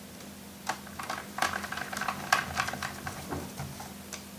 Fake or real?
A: real